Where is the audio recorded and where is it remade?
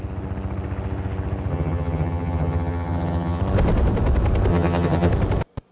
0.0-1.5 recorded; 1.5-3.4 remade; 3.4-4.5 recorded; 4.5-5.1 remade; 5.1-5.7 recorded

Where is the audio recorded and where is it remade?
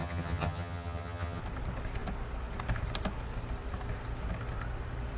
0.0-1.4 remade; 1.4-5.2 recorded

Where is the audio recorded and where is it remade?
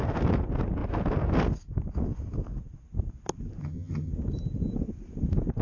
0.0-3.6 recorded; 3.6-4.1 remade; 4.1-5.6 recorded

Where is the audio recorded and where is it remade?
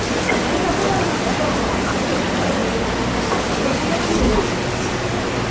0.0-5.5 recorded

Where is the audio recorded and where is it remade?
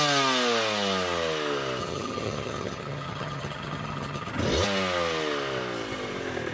0.0-1.8 recorded; 1.8-4.3 remade; 4.3-6.5 recorded